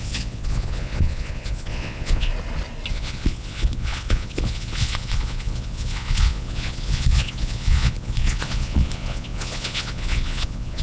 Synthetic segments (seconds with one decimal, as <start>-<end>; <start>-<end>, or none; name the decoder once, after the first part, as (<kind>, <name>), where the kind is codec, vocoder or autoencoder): 0.0-2.3 (vocoder, Vocos); 2.9-10.8